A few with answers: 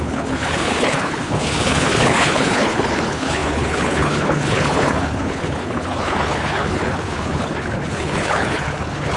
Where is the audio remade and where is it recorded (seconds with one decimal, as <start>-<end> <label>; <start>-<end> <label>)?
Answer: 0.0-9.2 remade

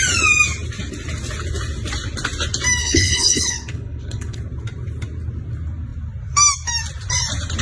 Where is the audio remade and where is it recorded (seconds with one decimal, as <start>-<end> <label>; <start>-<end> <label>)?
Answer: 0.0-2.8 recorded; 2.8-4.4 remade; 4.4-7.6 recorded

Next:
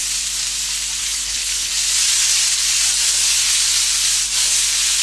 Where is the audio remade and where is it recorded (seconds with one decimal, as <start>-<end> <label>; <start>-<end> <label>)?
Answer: 0.0-1.0 recorded; 1.0-1.7 remade; 1.7-5.0 recorded

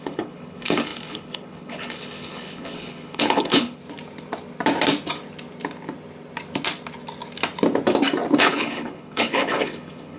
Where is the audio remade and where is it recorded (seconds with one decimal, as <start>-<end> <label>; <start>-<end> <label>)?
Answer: 0.0-3.8 remade; 3.8-8.4 recorded; 8.4-10.2 remade

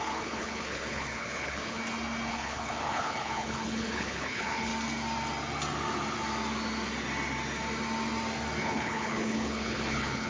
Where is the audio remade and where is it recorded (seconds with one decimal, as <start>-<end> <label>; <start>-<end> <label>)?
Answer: 0.0-1.8 remade; 1.8-2.3 recorded; 2.3-4.7 remade; 4.7-8.6 recorded; 8.6-10.3 remade

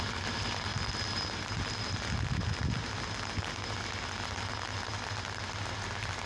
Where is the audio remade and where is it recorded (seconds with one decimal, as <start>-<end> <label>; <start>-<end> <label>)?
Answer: 0.0-6.3 recorded